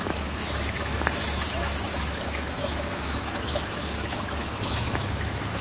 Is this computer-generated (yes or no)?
yes